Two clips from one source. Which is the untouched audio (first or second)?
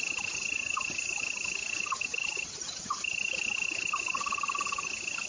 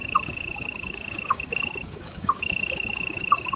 first